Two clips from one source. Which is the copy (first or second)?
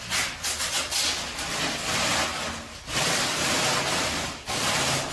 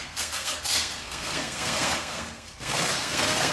second